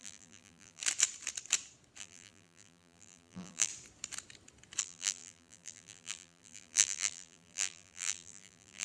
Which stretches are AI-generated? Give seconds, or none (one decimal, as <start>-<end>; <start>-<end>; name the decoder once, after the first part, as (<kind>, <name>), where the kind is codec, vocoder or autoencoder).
0.0-0.8 (vocoder, BigVGAN v2); 2.0-3.7; 4.8-8.8